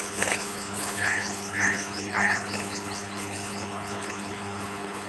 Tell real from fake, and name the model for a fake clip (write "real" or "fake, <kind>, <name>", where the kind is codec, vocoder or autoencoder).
fake, codec, HILCodec